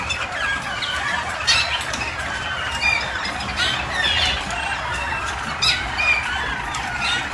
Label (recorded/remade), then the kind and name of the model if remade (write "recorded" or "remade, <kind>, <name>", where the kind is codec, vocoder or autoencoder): recorded